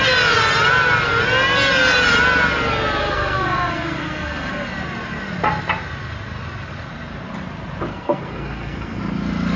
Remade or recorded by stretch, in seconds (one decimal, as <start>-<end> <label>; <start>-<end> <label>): 0.0-3.0 recorded; 3.0-4.5 remade; 4.5-7.9 recorded; 7.9-9.0 remade; 9.0-9.6 recorded